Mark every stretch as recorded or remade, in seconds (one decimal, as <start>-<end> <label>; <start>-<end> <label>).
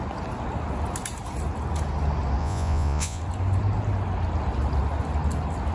0.0-2.4 recorded; 2.4-3.2 remade; 3.2-5.7 recorded